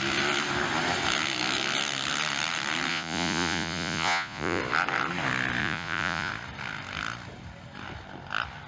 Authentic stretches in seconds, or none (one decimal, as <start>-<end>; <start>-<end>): 0.0-2.9; 4.6-5.6; 6.3-8.7